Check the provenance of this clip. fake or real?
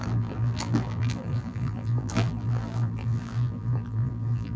fake